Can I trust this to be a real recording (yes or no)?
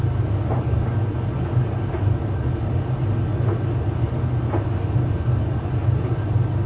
yes